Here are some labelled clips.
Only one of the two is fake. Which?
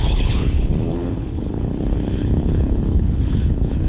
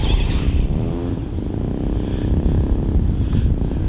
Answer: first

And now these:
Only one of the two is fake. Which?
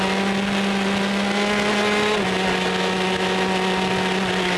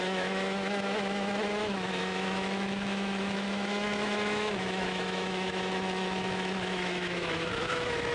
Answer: second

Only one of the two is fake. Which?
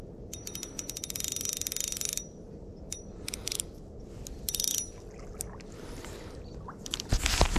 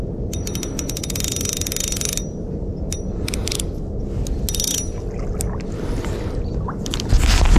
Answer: first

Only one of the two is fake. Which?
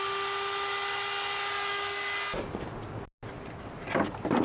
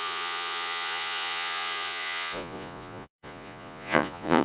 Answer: second